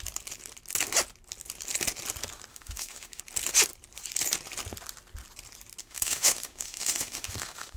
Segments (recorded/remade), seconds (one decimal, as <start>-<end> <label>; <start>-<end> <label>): 0.0-2.5 recorded; 2.5-3.2 remade; 3.2-5.8 recorded; 5.8-7.8 remade